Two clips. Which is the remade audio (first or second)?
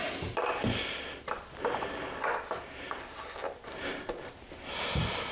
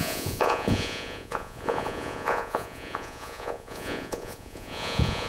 second